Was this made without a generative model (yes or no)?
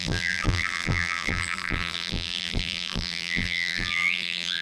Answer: no